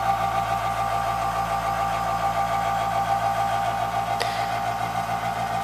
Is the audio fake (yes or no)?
no